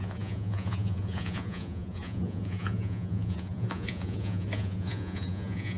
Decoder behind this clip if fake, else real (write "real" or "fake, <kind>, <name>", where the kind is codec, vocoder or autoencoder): fake, vocoder, Vocos